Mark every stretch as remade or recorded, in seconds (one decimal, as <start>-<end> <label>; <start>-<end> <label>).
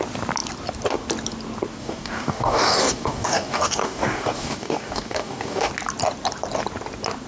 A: 0.0-1.8 recorded; 1.8-5.7 remade; 5.7-7.3 recorded